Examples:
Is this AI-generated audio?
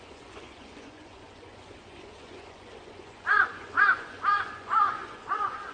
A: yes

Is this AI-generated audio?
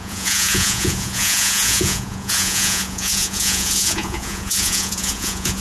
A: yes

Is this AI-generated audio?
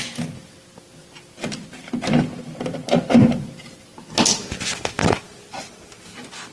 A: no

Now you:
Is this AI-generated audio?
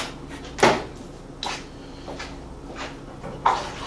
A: no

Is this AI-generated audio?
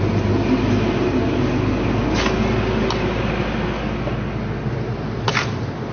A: no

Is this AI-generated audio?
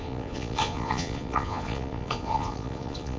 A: yes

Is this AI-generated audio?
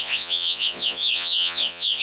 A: yes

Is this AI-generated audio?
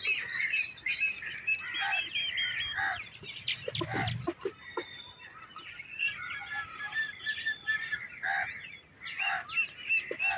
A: no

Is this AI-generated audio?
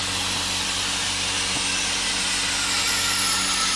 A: no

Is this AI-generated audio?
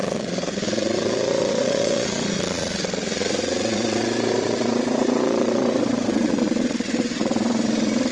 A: yes